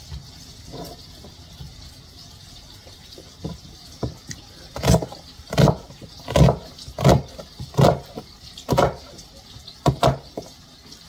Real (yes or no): yes